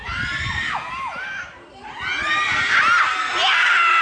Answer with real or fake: real